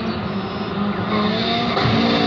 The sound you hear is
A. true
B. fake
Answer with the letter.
A